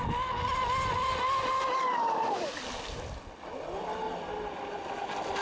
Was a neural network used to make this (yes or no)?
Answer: no